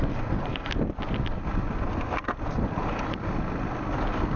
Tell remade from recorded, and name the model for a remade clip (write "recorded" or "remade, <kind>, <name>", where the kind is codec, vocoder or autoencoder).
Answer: recorded